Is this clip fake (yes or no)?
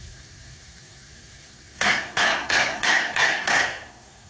yes